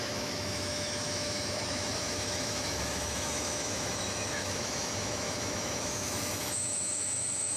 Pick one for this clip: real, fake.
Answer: fake